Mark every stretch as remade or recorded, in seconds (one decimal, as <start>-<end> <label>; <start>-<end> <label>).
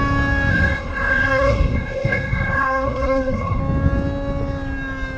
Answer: 0.0-0.5 recorded; 0.5-3.6 remade; 3.6-5.2 recorded